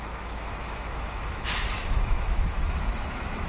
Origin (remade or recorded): remade